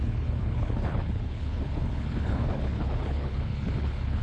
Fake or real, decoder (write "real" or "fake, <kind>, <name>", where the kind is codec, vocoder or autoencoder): fake, codec, HILCodec